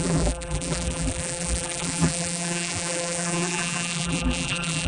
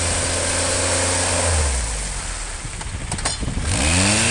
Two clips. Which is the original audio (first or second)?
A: second